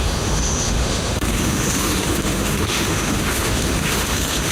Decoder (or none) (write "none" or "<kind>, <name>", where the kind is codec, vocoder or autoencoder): autoencoder, DAC-VAE